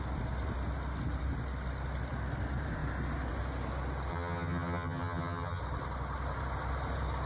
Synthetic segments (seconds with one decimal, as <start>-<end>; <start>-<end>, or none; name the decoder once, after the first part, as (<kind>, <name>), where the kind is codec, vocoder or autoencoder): 4.1-5.6 (vocoder, HiFi-GAN)